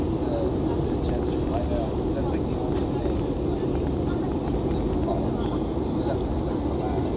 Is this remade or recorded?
recorded